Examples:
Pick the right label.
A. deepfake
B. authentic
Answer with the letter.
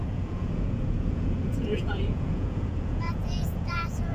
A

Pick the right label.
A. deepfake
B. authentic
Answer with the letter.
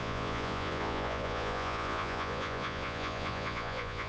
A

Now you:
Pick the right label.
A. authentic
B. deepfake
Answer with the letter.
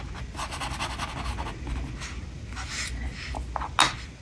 A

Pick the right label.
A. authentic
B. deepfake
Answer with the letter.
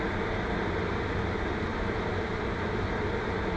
A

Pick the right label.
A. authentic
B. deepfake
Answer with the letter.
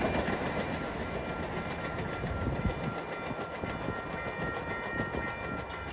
A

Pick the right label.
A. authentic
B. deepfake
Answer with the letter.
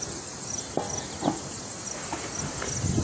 A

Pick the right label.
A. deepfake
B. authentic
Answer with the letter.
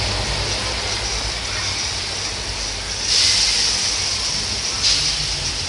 B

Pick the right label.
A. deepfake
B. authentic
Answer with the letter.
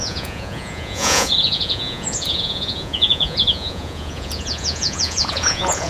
A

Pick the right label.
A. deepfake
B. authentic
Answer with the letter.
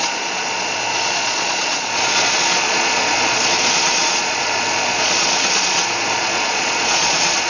A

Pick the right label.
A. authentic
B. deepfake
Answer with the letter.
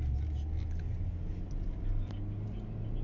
A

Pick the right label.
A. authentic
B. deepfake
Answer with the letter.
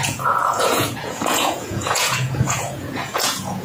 B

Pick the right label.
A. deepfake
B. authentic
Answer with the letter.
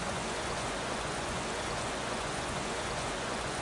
A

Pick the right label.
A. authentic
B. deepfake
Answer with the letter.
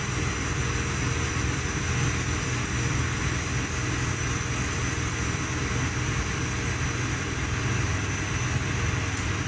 A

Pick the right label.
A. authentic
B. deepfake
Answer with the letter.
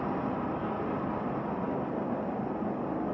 A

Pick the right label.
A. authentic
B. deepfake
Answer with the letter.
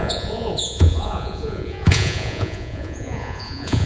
B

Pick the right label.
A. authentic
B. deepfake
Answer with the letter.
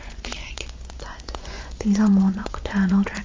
B